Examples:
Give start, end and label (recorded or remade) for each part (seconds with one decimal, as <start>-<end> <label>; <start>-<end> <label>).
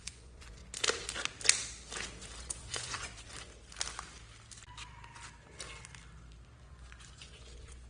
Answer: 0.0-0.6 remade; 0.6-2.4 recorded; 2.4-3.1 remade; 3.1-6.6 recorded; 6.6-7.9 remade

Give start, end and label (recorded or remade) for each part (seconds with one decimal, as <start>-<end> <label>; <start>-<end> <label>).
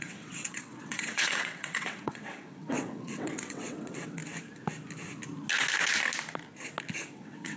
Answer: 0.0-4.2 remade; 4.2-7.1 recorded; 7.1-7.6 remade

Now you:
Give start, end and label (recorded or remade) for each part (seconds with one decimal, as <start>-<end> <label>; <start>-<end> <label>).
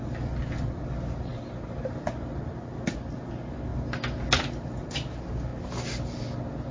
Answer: 0.0-6.7 recorded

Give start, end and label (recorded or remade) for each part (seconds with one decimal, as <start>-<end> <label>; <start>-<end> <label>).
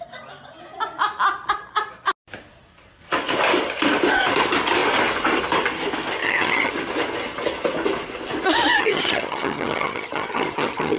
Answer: 0.0-6.2 recorded; 6.2-6.7 remade; 6.7-8.8 recorded; 8.8-11.0 remade